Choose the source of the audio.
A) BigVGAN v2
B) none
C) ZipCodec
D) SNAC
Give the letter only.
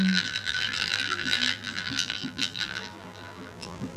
A